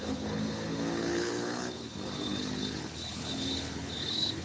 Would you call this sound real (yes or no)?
no